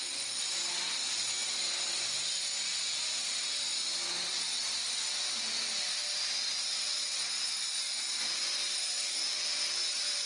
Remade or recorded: recorded